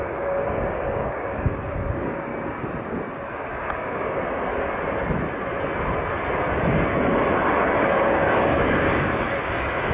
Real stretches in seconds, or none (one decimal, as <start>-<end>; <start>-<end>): 2.3-3.3; 4.5-7.8

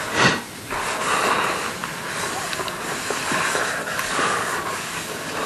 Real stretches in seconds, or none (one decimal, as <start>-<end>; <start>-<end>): 0.0-3.8

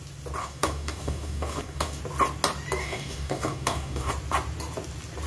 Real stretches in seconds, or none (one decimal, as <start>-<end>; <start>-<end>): 0.0-0.4; 2.0-2.8; 4.1-5.3